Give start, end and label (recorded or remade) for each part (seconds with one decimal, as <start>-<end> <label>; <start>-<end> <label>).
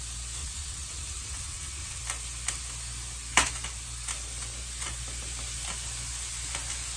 0.0-0.4 recorded; 0.4-2.0 remade; 2.0-7.0 recorded